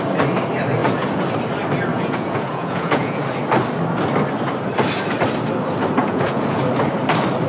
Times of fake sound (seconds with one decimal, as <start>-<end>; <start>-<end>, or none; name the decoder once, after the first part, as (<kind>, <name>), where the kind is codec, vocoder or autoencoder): 0.8-1.3 (vocoder, Vocos); 1.9-3.2; 6.0-6.6

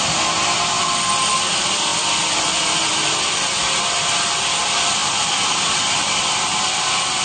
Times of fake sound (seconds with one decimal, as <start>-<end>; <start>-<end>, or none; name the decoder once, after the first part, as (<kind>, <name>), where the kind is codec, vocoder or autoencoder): 1.9-3.5 (vocoder, BigVGAN v2)

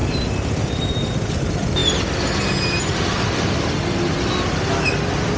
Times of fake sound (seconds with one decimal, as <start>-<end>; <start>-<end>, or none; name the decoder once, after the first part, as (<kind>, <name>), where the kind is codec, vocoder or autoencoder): 0.0-0.7 (vocoder, BigVGAN v2)

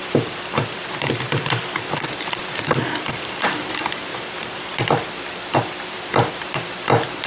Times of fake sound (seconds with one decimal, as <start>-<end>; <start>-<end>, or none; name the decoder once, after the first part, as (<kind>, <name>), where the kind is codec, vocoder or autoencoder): 0.0-7.3 (vocoder, BigVGAN v2)

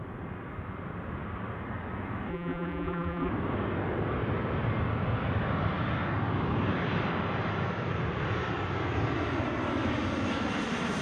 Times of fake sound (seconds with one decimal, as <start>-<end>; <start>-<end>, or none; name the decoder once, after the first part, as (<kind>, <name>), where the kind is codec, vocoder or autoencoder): 2.3-3.3 (vocoder, BigVGAN v2)

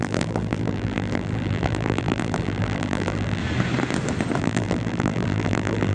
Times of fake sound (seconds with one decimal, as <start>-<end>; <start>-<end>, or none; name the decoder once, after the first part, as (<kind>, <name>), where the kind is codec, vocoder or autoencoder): 0.0-3.4 (vocoder, BigVGAN v2); 4.4-5.9